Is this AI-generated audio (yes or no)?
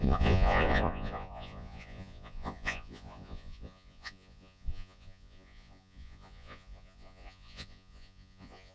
yes